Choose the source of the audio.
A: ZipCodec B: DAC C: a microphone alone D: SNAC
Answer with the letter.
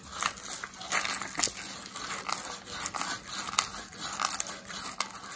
C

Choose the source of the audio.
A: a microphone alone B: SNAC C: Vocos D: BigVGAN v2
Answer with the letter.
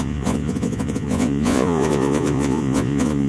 C